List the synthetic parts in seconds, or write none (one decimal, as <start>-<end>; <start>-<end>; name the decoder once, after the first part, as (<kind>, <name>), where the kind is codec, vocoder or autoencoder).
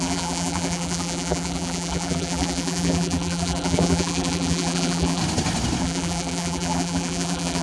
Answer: 0.0-5.2 (vocoder, BigVGAN v2); 5.8-7.6